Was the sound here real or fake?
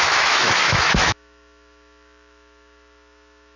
fake